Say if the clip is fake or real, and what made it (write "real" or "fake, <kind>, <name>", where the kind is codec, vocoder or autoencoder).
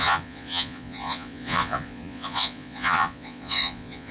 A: fake, vocoder, Vocos